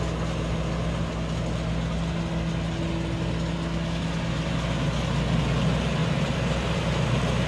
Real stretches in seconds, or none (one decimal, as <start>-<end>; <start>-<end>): 0.0-6.0; 6.8-7.5